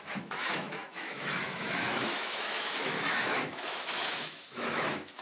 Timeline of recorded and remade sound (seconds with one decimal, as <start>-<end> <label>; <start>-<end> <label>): 0.0-5.2 remade